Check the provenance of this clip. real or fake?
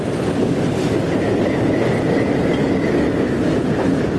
real